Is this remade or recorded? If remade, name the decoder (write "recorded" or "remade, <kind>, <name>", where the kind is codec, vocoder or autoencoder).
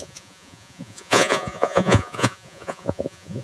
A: remade, vocoder, Vocos